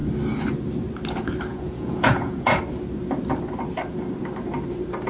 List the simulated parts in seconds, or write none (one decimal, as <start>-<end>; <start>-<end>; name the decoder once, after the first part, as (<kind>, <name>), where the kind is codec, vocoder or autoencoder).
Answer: 1.5-2.6 (vocoder, Vocos)